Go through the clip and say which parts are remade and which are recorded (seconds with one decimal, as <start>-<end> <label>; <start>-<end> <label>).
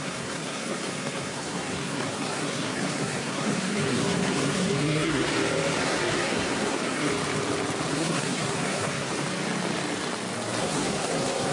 0.0-5.3 remade; 5.3-5.8 recorded; 5.8-7.1 remade; 7.1-7.9 recorded; 7.9-9.1 remade; 9.1-10.6 recorded; 10.6-11.5 remade